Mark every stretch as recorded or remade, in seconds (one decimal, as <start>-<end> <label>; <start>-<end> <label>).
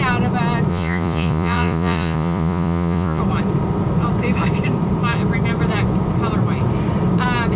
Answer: 0.0-0.7 recorded; 0.7-3.2 remade; 3.2-7.6 recorded